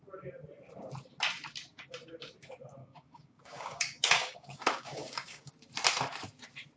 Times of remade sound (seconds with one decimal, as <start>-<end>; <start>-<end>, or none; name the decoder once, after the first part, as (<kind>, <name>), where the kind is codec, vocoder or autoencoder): 2.8-5.5 (codec, DAC)